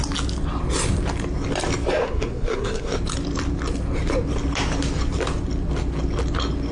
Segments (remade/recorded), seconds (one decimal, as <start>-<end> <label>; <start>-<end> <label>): 0.0-2.0 recorded; 2.0-2.9 remade; 2.9-6.7 recorded